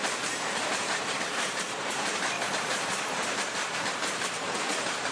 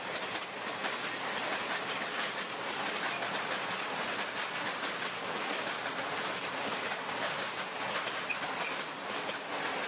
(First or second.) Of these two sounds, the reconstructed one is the first